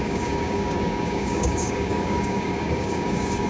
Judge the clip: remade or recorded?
remade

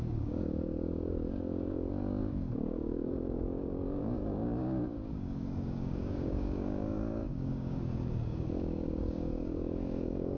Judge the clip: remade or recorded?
remade